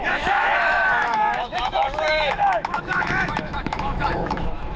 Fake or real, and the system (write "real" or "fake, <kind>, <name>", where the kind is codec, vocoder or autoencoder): fake, autoencoder, DAC-VAE